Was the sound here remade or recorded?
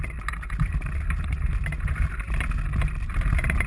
recorded